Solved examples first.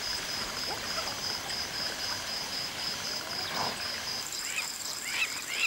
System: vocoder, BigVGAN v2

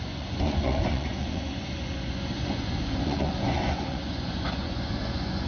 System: vocoder, Vocos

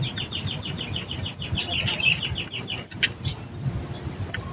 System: none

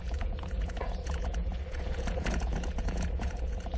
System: vocoder, Vocos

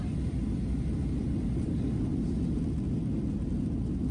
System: none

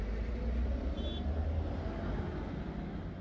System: none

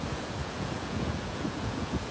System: vocoder, Vocos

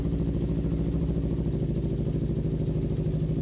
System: none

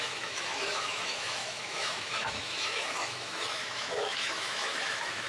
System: autoencoder, DAC-VAE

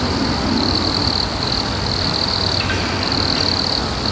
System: none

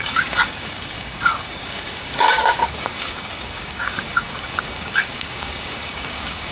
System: codec, DAC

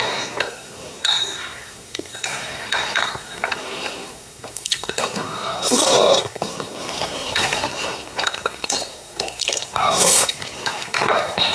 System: codec, SNAC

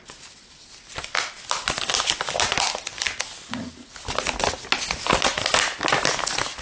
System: none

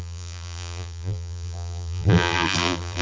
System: vocoder, BigVGAN v2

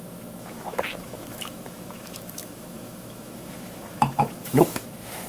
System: autoencoder, DAC-VAE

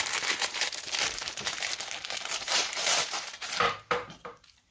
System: vocoder, BigVGAN v2